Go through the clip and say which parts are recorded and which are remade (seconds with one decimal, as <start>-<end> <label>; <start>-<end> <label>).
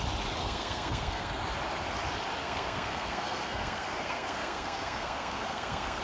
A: 0.0-0.4 recorded; 0.4-1.3 remade; 1.3-2.4 recorded; 2.4-6.0 remade